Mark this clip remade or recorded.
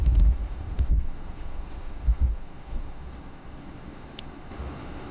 remade